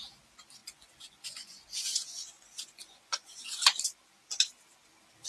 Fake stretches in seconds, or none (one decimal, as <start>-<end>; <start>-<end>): 0.6-3.8